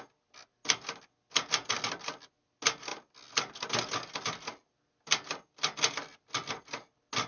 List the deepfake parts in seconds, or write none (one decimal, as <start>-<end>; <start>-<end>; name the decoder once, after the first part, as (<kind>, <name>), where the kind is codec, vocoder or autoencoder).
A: none